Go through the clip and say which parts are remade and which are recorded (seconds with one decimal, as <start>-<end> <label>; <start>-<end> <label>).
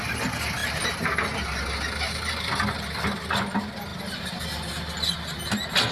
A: 0.0-5.9 recorded